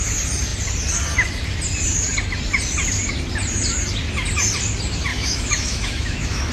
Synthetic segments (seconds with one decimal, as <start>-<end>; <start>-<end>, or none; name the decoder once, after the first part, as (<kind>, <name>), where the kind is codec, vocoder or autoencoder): 5.1-6.5 (autoencoder, DAC-VAE)